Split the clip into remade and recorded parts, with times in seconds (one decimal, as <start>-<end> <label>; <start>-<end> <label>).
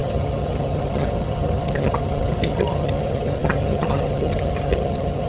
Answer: 0.0-5.3 remade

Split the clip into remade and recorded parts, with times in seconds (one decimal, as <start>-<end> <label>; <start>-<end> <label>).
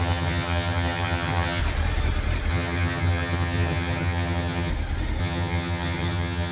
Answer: 0.0-1.6 remade; 1.6-2.5 recorded; 2.5-4.7 remade; 4.7-5.2 recorded; 5.2-6.5 remade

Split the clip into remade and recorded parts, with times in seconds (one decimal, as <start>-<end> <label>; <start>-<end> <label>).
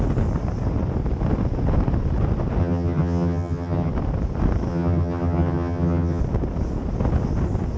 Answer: 0.0-2.6 recorded; 2.6-3.9 remade; 3.9-4.7 recorded; 4.7-6.2 remade; 6.2-7.8 recorded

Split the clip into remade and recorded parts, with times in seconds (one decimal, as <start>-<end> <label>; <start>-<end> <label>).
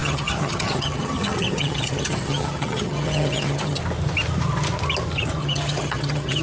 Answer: 0.0-3.8 remade; 3.8-5.4 recorded; 5.4-6.4 remade